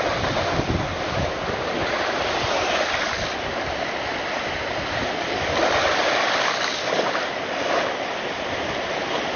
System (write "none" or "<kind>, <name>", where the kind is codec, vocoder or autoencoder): none